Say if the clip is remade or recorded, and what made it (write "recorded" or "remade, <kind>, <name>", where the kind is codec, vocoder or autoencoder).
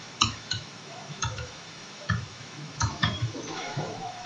remade, autoencoder, DAC-VAE